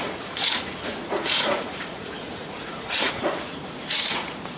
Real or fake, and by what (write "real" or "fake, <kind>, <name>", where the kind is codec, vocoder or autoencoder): fake, vocoder, Vocos